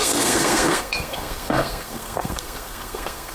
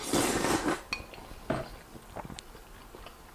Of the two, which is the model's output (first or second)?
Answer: first